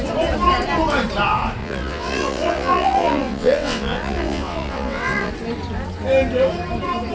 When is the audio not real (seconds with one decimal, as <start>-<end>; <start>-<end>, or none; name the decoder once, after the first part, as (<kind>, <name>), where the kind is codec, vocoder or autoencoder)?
1.6-5.3 (vocoder, WaveNeXt)